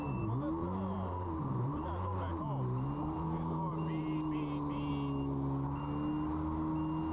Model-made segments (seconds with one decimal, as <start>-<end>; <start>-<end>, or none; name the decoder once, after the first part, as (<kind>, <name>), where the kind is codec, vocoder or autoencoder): 0.6-4.9 (vocoder, BigVGAN v2)